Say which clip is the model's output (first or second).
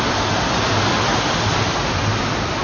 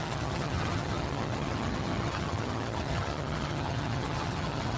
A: second